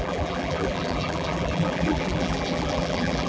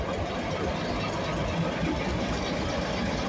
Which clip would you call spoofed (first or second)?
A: first